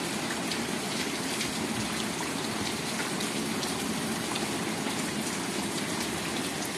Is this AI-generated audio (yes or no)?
no